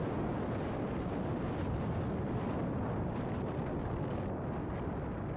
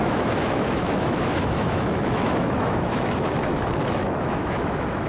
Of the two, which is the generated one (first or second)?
second